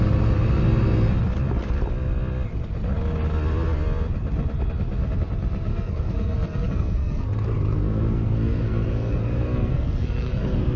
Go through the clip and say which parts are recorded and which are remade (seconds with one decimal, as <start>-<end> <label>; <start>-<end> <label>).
0.0-5.7 recorded; 5.7-10.8 remade